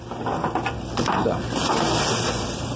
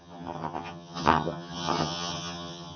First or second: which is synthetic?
second